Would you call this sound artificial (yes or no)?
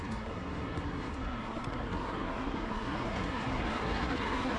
yes